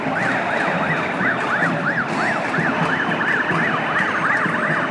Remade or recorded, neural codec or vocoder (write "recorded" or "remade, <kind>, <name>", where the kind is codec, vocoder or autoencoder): recorded